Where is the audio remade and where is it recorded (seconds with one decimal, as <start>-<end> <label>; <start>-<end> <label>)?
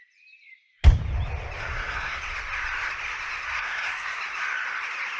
0.0-1.6 recorded; 1.6-2.2 remade; 2.2-3.5 recorded; 3.5-4.2 remade; 4.2-5.2 recorded